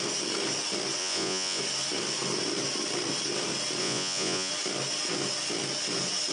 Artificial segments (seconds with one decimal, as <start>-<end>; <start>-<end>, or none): 1.0-1.6; 3.8-4.5